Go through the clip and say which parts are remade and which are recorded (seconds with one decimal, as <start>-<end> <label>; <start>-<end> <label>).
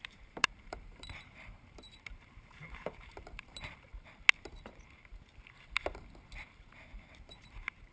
0.0-3.9 remade; 3.9-7.1 recorded; 7.1-7.9 remade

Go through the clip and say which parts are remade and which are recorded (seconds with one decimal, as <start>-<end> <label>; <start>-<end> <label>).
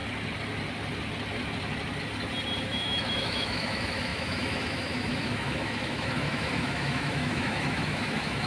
0.0-2.6 recorded; 2.6-8.5 remade